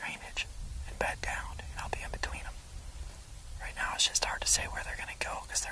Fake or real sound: real